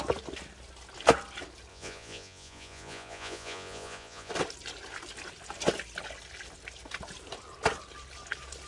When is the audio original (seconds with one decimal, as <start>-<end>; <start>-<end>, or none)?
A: 0.0-1.7; 4.3-8.7